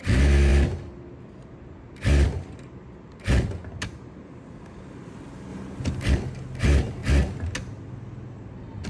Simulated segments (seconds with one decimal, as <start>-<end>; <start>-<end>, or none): none

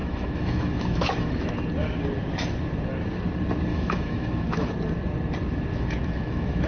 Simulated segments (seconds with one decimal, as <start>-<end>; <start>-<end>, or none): 0.0-1.5; 3.7-4.7; 5.7-6.7

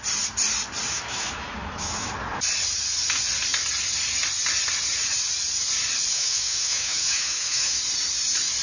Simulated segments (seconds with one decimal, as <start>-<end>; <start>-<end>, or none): 0.9-2.1; 6.1-7.8

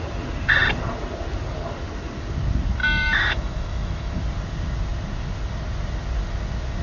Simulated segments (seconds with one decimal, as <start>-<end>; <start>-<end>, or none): 2.8-4.2

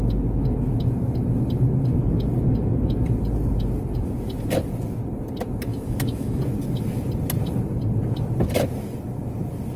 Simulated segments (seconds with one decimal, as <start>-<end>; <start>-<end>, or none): 5.7-6.4

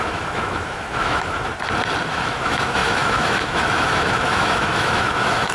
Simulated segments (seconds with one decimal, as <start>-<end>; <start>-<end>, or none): 0.0-1.5; 2.1-5.5